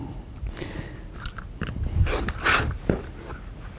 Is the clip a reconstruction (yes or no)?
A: no